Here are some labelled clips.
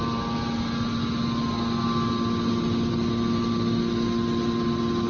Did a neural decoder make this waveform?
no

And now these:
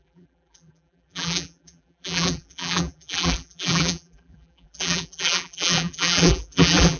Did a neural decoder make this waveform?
yes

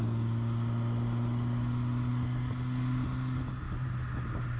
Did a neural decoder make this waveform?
no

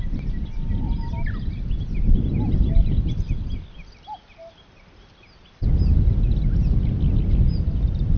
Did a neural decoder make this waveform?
no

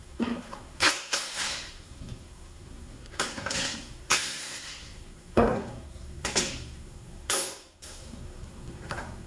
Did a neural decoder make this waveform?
yes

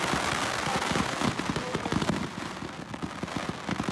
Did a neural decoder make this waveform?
no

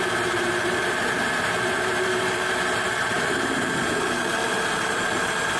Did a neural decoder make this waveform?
yes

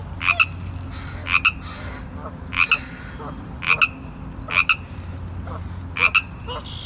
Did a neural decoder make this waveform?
no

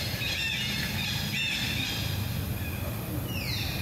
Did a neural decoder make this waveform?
no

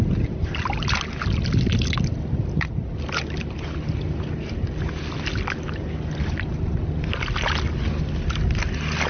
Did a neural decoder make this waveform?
no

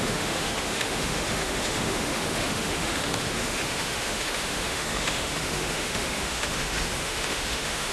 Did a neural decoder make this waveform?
yes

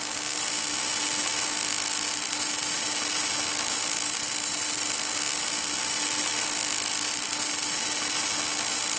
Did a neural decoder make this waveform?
no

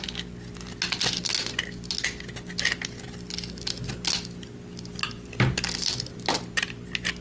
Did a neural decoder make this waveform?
no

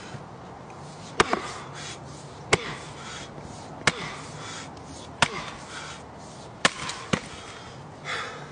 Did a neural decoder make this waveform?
no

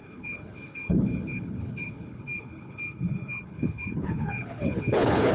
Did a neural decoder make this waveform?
yes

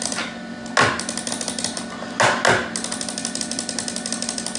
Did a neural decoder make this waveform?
no